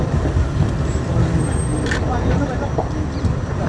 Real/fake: real